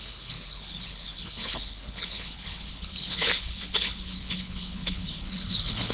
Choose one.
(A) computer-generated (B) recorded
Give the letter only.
A